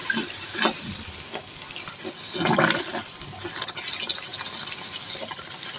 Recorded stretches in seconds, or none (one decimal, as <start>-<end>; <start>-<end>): 0.0-5.8